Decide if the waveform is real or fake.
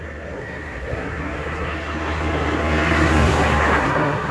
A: fake